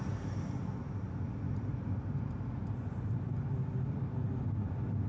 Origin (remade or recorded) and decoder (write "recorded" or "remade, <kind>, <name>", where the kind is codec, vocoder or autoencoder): recorded